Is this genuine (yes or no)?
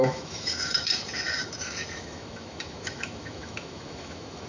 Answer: no